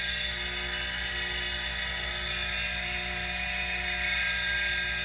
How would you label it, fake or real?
real